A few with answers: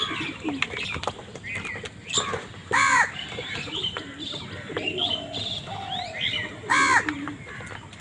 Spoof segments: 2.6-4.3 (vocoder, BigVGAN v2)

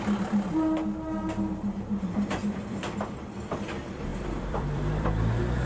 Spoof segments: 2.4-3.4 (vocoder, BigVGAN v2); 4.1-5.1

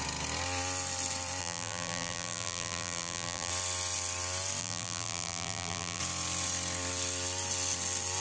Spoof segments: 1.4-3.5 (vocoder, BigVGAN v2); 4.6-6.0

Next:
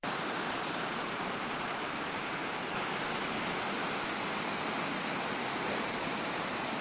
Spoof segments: 0.0-2.4 (vocoder, BigVGAN v2); 5.5-6.8

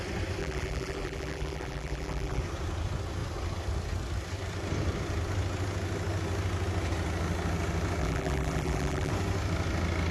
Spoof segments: 0.4-2.4 (vocoder, BigVGAN v2); 8.0-9.1

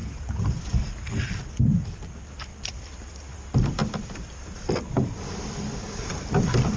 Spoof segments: 2.5-3.1 (vocoder, BigVGAN v2); 3.8-4.8

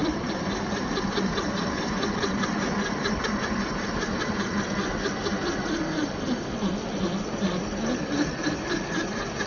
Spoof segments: 0.0-4.1 (vocoder, BigVGAN v2)